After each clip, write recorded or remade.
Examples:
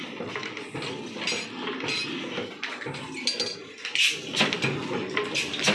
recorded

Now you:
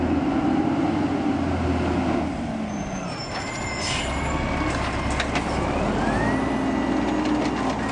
recorded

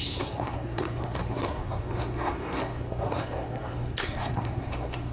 remade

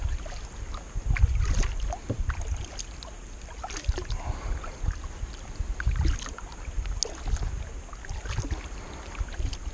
recorded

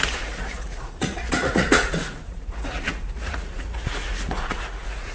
remade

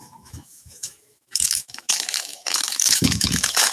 remade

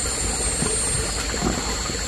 recorded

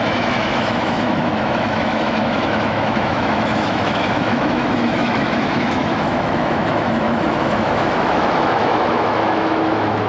remade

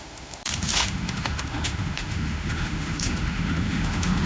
remade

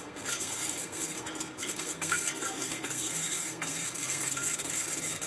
remade